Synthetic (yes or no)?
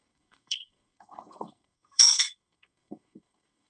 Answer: yes